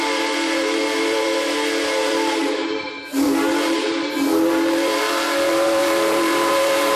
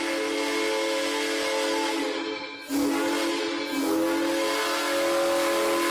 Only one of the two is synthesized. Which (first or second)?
first